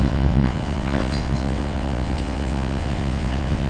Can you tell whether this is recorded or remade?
remade